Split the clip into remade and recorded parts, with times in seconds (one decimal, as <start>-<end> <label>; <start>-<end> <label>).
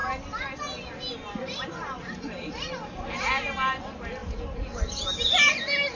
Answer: 0.0-6.0 recorded